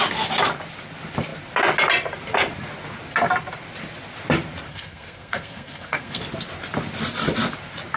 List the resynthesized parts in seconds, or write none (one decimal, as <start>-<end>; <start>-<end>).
4.7-6.2